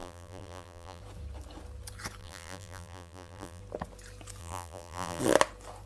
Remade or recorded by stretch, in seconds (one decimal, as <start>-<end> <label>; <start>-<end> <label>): 0.0-1.0 remade; 1.0-2.2 recorded; 2.2-3.6 remade; 3.6-4.4 recorded; 4.4-5.2 remade; 5.2-5.9 recorded